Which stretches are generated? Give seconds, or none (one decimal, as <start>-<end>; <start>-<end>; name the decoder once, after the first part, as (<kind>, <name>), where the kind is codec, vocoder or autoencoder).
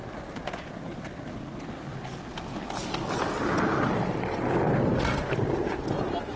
0.0-0.7 (vocoder, BigVGAN v2)